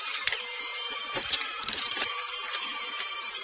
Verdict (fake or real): fake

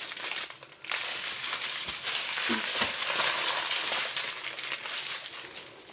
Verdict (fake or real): real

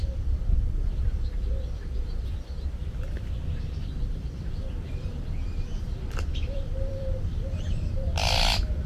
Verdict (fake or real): fake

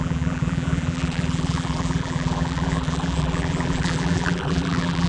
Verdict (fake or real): fake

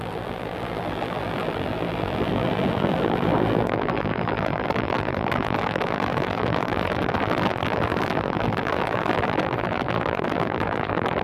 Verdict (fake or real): fake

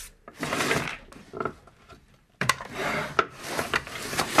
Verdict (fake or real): fake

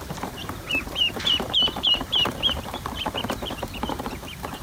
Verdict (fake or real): fake